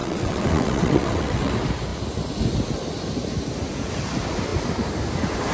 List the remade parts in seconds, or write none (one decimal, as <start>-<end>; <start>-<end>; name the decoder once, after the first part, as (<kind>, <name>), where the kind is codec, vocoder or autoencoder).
0.0-1.5 (vocoder, WaveNeXt)